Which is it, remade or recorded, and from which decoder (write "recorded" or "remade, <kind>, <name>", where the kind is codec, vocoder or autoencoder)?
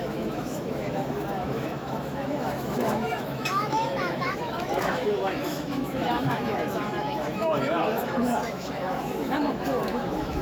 remade, autoencoder, DAC-VAE